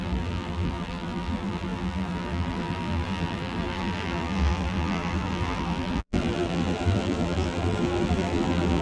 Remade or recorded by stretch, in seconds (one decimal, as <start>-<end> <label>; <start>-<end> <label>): 0.0-8.8 remade